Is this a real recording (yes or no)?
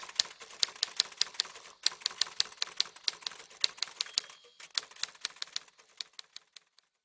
yes